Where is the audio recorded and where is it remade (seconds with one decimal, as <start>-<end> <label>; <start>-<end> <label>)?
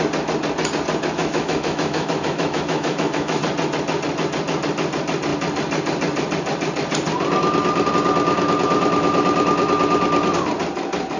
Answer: 0.0-1.2 recorded; 1.2-3.4 remade; 3.4-11.2 recorded